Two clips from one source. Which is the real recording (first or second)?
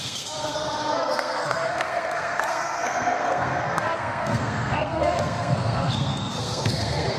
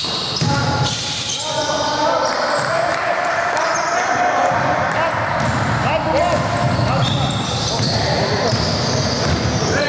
second